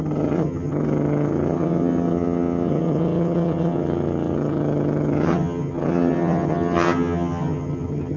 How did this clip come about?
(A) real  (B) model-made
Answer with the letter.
B